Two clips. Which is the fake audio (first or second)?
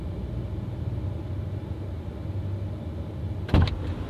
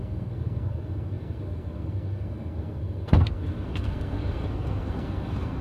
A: second